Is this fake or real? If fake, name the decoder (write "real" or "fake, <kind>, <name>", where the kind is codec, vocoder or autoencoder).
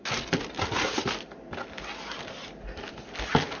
real